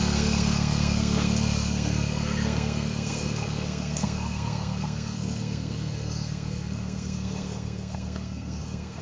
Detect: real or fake fake